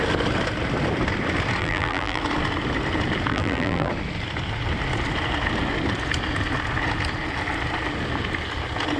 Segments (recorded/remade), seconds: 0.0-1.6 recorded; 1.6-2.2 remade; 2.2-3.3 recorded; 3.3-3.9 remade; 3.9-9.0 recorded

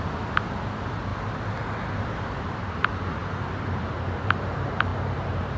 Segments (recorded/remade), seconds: 0.0-1.1 remade; 1.1-1.6 recorded; 1.6-3.2 remade; 3.2-3.9 recorded; 3.9-5.6 remade

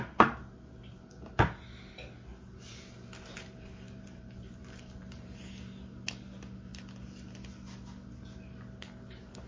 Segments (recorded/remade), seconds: 0.0-2.3 recorded; 2.3-5.5 remade; 5.5-9.5 recorded

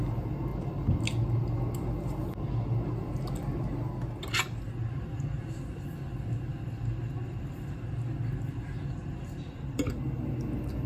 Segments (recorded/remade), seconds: 0.0-6.5 recorded; 6.5-7.8 remade; 7.8-9.0 recorded; 9.0-9.9 remade; 9.9-10.9 recorded

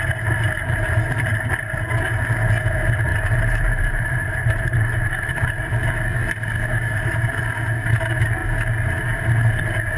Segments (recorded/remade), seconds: 0.0-3.1 recorded; 3.1-5.7 remade; 5.7-10.0 recorded

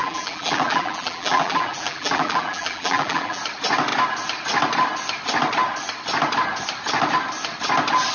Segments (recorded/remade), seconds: 0.0-3.4 remade; 3.4-8.1 recorded

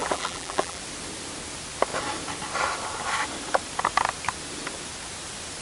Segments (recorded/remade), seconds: 0.0-0.8 remade; 0.8-5.6 recorded